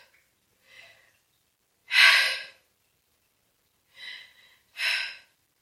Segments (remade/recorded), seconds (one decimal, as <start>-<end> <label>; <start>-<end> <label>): 0.0-1.8 recorded; 1.8-5.6 remade

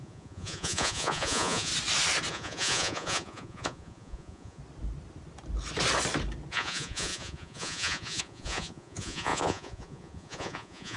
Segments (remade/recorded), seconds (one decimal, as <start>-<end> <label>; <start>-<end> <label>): 0.0-1.7 remade; 1.7-2.3 recorded; 2.3-4.6 remade; 4.6-6.5 recorded; 6.5-11.0 remade

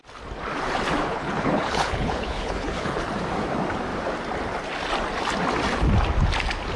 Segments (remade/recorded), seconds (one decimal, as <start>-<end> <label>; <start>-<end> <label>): 0.0-1.0 recorded; 1.0-3.1 remade; 3.1-6.8 recorded

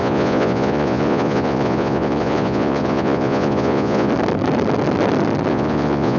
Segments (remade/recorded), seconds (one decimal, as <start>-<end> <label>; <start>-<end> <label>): 0.0-4.1 remade; 4.1-5.5 recorded; 5.5-6.2 remade

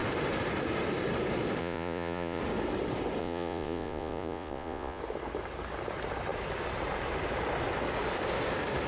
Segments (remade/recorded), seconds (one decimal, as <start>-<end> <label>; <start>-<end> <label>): 0.0-1.6 recorded; 1.6-2.4 remade; 2.4-3.2 recorded; 3.2-5.0 remade; 5.0-8.9 recorded